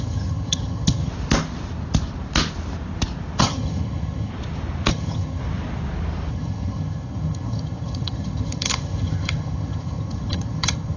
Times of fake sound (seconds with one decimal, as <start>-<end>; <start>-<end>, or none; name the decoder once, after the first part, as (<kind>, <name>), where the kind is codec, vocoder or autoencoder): 0.0-1.1 (vocoder, HiFi-GAN); 3.4-4.3; 4.9-5.4; 6.3-11.0